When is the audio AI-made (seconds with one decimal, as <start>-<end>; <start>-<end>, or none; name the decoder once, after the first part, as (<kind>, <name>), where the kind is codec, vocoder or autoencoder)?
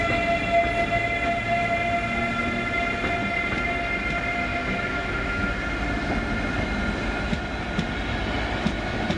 4.5-5.5 (autoencoder, DAC-VAE)